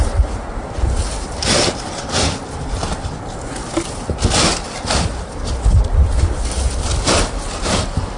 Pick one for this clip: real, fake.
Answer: real